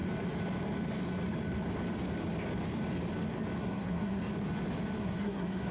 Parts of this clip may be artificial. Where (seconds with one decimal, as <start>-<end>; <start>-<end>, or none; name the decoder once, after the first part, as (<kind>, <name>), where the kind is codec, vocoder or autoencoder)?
3.6-4.2 (codec, SNAC); 5.0-5.7